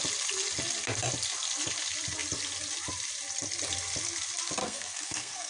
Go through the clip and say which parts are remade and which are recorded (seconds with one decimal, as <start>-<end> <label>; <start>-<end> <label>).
0.0-4.6 recorded; 4.6-5.5 remade